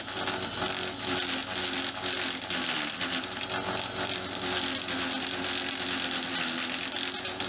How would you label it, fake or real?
real